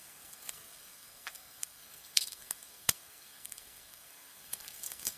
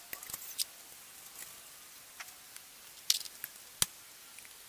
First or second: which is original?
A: second